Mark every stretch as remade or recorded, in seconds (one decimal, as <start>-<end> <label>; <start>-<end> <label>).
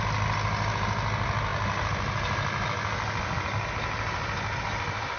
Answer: 0.0-5.2 recorded